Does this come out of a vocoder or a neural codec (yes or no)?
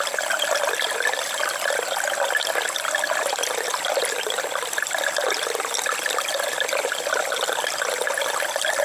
no